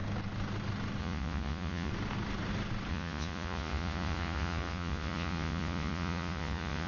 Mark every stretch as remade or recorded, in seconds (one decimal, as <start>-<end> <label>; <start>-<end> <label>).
0.0-1.0 recorded; 1.0-1.9 remade; 1.9-2.9 recorded; 2.9-6.9 remade